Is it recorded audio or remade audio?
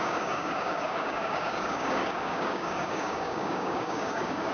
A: remade